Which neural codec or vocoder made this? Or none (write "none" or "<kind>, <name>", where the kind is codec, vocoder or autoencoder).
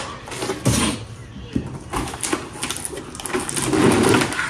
none